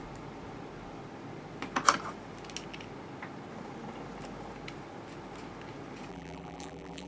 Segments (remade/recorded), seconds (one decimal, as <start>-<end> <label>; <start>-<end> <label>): 0.0-6.1 recorded; 6.1-7.1 remade